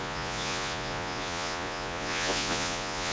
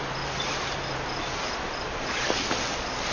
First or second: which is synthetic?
first